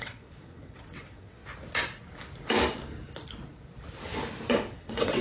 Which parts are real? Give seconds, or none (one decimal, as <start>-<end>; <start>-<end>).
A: 1.4-4.5